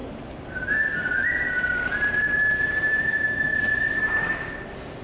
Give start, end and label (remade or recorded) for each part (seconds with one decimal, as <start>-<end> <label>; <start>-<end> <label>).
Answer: 0.0-5.0 recorded